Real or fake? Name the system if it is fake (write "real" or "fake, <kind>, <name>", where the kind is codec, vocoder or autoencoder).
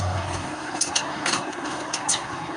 fake, codec, SNAC